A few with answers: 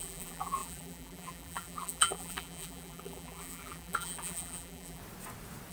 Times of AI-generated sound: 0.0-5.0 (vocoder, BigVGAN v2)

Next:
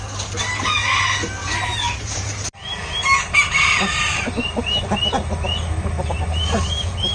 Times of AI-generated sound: 1.4-4.8 (vocoder, BigVGAN v2)

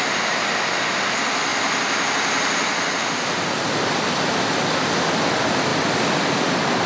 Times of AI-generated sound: 1.5-2.9 (vocoder, BigVGAN v2); 5.7-6.9

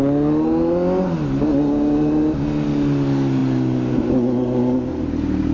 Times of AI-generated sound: 3.4-3.9 (vocoder, BigVGAN v2)

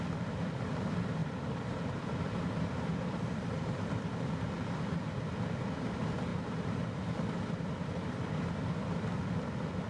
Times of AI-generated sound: 1.2-4.3 (vocoder, BigVGAN v2); 6.3-8.3

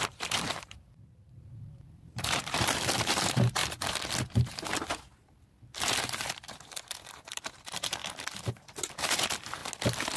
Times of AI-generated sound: 0.0-3.6 (vocoder, BigVGAN v2); 7.4-8.0; 8.9-9.6

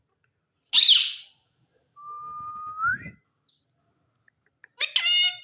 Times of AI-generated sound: 2.9-3.6 (vocoder, BigVGAN v2)